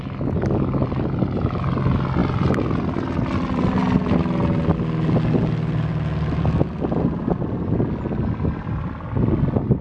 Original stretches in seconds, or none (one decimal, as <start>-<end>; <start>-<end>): 0.0-9.8